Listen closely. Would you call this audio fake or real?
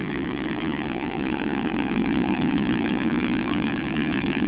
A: fake